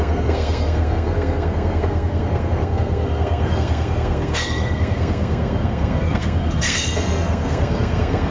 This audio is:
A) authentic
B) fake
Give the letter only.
B